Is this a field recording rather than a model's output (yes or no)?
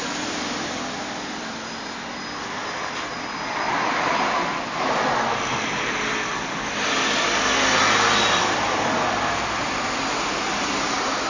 yes